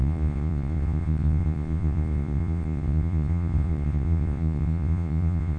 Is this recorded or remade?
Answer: remade